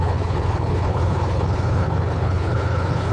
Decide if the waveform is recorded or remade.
remade